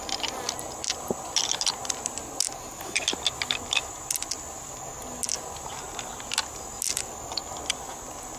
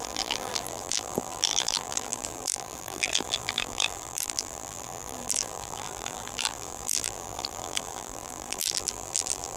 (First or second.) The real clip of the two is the first